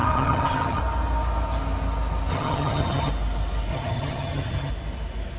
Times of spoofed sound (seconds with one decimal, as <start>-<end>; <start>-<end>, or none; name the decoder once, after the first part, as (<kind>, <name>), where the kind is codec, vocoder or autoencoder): 0.0-0.8 (vocoder, HiFi-GAN); 2.3-3.1; 3.7-4.7